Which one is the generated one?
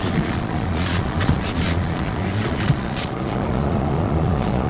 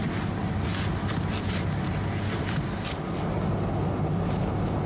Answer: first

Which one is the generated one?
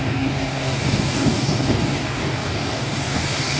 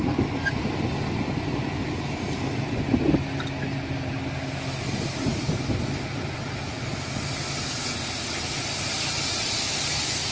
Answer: first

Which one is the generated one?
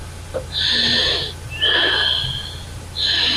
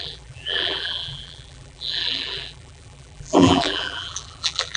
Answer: second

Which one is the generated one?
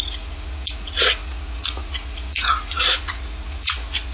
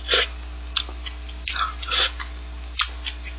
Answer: first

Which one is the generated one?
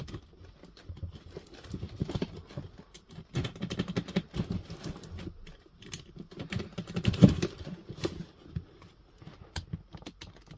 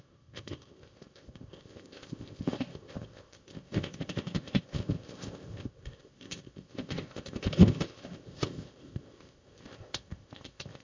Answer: second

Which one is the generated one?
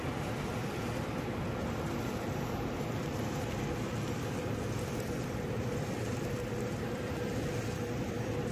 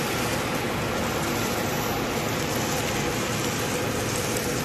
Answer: first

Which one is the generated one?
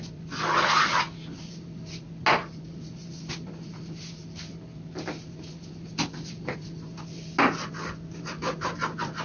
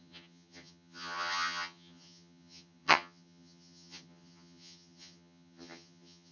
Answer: second